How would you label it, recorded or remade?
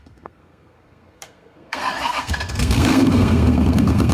remade